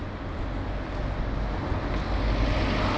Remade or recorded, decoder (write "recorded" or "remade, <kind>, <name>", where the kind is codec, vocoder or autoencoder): recorded